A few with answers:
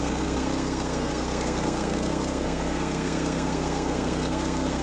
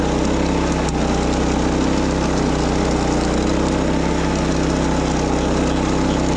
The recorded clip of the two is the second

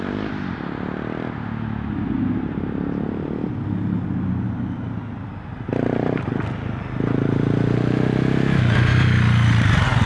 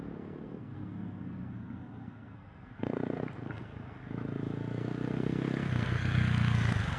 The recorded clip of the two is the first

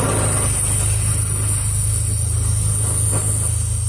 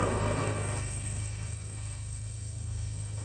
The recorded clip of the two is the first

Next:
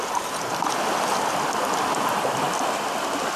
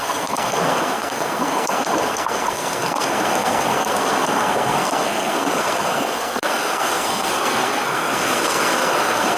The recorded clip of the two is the first